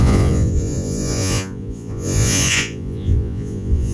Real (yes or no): no